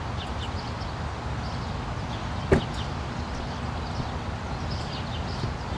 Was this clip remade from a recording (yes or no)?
no